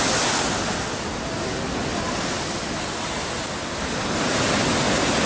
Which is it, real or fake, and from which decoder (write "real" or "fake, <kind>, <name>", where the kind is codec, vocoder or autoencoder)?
real